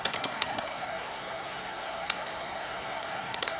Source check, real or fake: fake